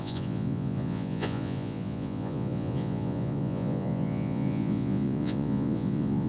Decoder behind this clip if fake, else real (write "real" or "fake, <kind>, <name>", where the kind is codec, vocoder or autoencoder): fake, vocoder, Vocos